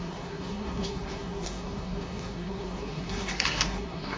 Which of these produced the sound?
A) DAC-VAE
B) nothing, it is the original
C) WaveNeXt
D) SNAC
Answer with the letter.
D